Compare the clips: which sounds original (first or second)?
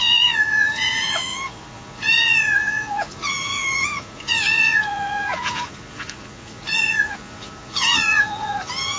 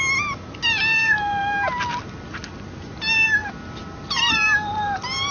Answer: second